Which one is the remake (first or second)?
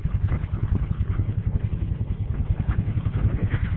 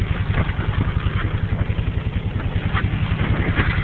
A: first